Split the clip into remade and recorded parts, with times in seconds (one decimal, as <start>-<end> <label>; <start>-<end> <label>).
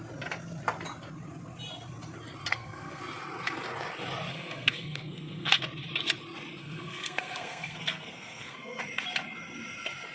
0.0-2.5 recorded; 2.5-3.0 remade; 3.0-4.3 recorded; 4.3-5.6 remade; 5.6-6.6 recorded; 6.6-8.8 remade; 8.8-10.1 recorded